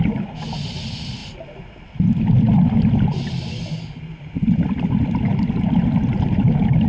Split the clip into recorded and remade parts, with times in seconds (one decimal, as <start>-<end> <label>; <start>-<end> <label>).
0.0-6.9 recorded